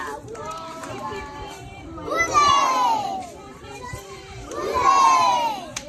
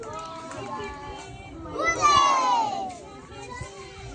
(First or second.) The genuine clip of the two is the second